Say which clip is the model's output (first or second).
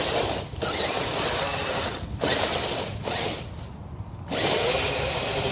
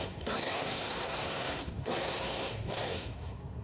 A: second